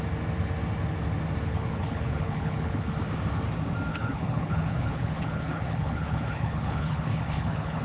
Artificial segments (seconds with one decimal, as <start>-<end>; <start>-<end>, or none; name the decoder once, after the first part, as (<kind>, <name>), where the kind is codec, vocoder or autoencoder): 1.5-2.9 (codec, HILCodec); 3.9-7.8